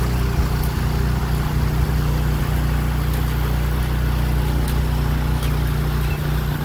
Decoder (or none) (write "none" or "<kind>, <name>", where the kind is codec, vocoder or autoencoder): none